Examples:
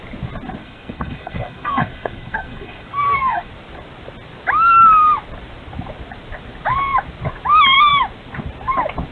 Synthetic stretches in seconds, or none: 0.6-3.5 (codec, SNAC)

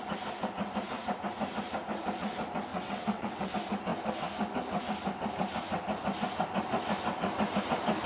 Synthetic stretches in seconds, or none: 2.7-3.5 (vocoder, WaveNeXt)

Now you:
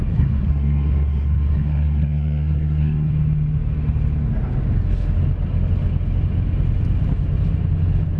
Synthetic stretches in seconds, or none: 0.0-3.1 (codec, SNAC)